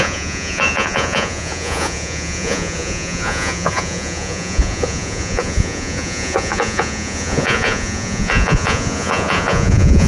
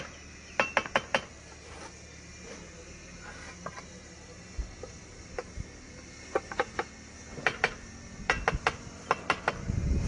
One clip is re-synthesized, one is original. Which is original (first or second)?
second